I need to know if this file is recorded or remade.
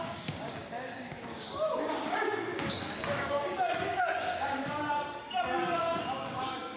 remade